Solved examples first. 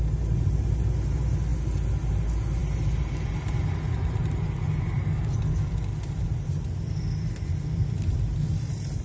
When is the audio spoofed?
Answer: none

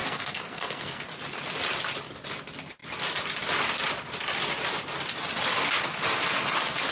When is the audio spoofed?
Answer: 0.0-1.0 (codec, SNAC)

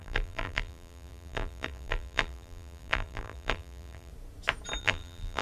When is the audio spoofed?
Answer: 0.0-4.1 (vocoder, BigVGAN v2); 4.8-5.4

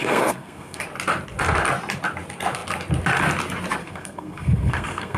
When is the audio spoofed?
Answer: 0.0-0.8 (codec, SNAC); 3.8-5.2